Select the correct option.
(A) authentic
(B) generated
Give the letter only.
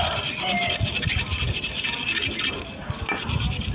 A